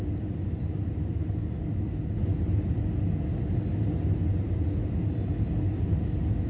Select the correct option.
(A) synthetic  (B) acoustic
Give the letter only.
B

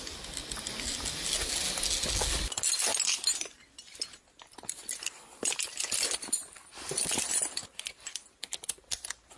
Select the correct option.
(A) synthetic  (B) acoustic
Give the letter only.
B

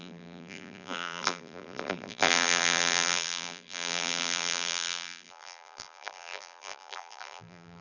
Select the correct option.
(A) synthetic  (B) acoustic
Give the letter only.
A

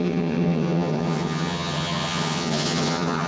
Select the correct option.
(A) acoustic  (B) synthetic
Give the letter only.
B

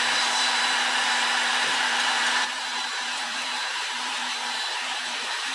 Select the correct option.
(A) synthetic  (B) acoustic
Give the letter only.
A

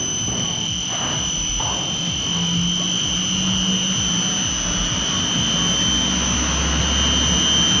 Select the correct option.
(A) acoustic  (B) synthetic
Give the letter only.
A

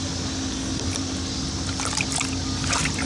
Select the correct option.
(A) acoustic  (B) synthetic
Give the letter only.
A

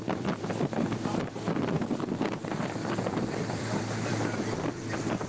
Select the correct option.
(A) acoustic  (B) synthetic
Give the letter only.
B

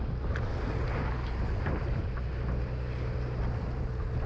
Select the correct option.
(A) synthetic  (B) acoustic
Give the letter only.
B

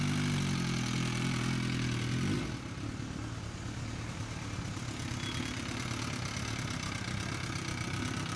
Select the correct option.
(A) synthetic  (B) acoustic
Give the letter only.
B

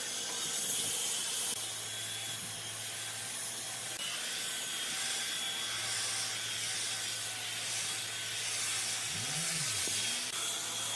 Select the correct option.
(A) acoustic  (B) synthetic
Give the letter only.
A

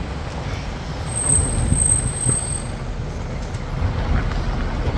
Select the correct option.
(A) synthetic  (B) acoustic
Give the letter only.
B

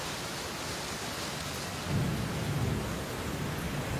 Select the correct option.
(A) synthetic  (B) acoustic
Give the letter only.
B